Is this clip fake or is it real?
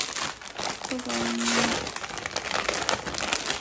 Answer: real